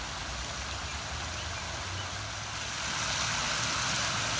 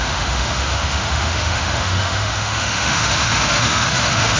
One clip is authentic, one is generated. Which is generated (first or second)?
second